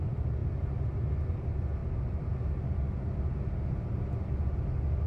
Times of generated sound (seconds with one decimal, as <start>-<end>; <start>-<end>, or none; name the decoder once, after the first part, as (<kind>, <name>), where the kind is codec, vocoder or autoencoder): none

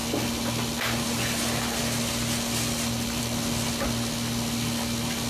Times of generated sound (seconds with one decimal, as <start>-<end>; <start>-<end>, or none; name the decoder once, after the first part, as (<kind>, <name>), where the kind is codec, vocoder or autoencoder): 0.0-3.2 (vocoder, BigVGAN v2)

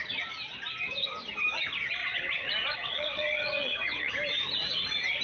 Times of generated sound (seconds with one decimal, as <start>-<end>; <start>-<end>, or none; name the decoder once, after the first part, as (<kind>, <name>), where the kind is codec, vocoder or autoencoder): 2.0-4.1 (vocoder, WaveNeXt)

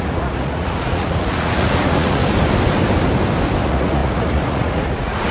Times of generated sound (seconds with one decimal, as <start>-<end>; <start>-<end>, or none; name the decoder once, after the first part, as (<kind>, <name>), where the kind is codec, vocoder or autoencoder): 0.0-2.2 (vocoder, Vocos); 3.6-5.3